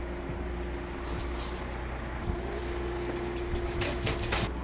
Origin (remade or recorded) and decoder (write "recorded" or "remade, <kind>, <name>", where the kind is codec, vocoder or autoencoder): recorded